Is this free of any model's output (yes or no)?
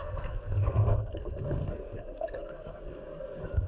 no